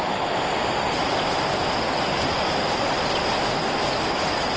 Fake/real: real